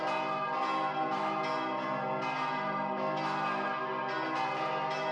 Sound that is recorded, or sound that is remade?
recorded